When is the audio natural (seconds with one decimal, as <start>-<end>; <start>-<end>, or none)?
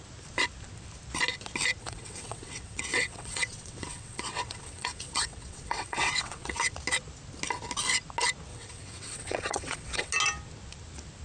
0.0-1.8; 6.7-8.5; 10.1-11.2